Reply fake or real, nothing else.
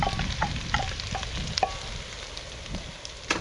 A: real